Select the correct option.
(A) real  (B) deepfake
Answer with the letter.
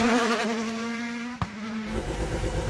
B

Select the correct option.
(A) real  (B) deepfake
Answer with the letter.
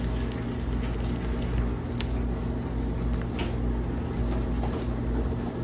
A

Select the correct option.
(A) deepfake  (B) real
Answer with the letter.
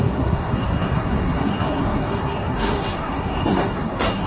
A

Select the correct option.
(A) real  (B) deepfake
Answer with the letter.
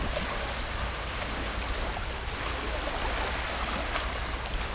A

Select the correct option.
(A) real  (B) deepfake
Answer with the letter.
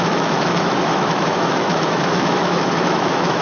B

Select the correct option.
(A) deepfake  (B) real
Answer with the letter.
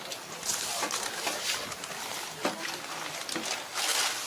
B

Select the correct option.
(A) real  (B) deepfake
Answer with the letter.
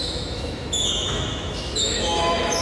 B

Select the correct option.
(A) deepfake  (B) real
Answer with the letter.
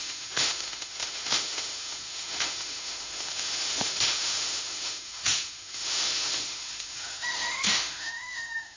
A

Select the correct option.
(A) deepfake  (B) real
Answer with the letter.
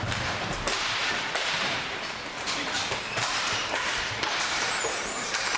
A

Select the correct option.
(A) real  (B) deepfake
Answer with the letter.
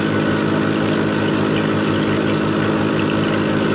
A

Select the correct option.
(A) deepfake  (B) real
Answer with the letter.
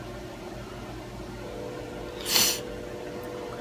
B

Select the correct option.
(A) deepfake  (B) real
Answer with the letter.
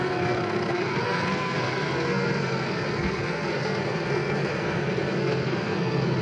A